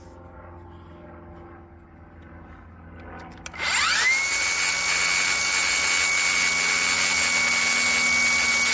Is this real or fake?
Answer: real